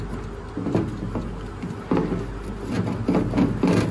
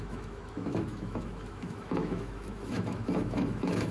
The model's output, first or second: second